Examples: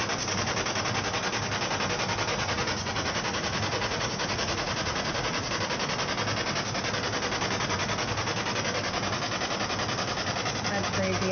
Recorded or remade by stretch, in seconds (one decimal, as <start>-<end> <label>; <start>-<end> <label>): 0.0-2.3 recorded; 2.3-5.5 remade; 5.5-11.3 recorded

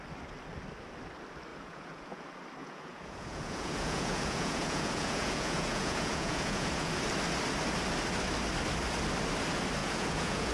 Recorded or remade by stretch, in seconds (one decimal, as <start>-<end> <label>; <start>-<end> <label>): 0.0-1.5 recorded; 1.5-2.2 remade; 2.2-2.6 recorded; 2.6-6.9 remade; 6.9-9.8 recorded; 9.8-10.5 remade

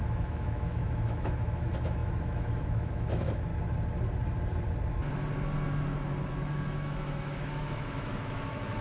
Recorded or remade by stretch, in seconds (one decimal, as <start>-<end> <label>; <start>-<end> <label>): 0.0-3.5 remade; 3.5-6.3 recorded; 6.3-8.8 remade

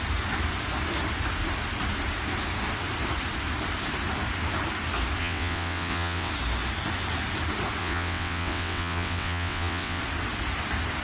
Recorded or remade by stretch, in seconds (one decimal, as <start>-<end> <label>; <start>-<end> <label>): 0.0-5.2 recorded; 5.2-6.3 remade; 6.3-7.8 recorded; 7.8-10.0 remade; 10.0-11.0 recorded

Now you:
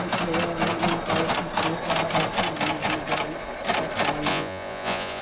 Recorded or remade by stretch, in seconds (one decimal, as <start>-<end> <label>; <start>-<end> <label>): 0.0-4.3 recorded; 4.3-5.2 remade